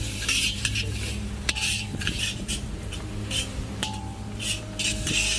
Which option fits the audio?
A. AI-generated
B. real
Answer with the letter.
A